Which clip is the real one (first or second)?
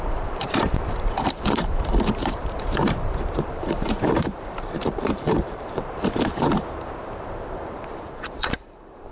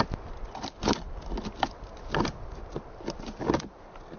second